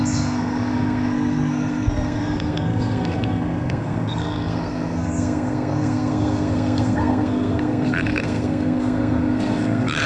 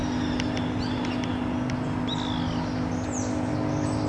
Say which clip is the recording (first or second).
second